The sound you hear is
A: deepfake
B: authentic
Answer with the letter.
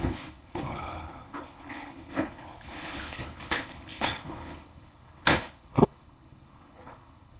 A